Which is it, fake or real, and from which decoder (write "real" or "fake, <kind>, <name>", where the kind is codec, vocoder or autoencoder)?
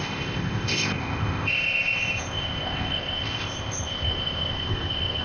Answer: fake, codec, ZipCodec